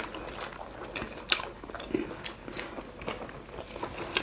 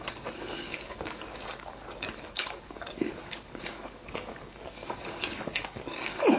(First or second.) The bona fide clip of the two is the first